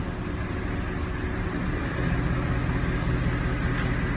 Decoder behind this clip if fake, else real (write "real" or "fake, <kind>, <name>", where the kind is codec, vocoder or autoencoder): real